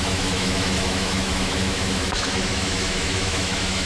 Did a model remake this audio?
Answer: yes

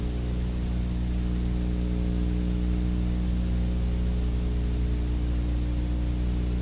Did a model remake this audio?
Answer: no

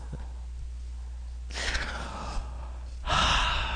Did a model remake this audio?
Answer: no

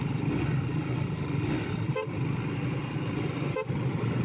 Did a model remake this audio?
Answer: no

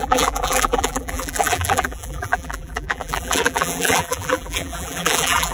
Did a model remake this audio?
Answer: yes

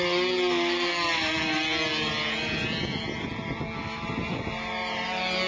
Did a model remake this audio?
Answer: no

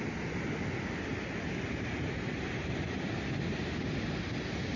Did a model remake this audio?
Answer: no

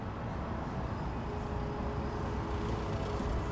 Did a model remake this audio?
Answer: no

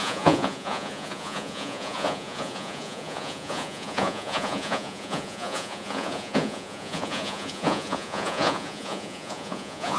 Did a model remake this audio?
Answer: yes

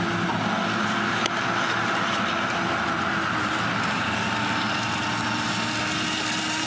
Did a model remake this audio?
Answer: no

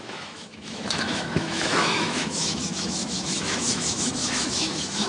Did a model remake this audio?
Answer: yes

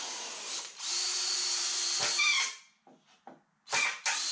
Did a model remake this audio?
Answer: no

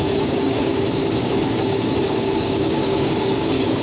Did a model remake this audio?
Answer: yes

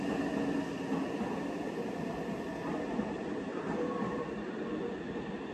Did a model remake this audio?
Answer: no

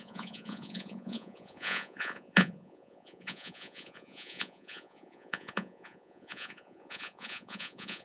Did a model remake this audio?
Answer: yes